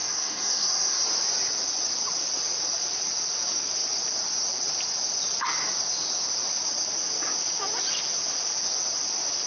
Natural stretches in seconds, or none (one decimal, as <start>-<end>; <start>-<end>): 1.0-9.5